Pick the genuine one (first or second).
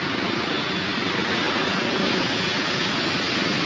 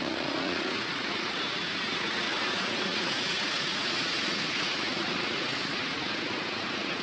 first